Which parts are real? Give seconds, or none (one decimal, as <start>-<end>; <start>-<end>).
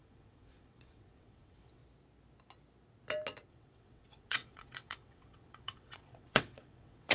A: 1.8-3.5